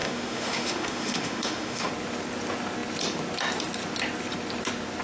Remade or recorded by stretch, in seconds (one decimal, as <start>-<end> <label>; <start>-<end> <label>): 0.0-1.9 remade; 1.9-5.0 recorded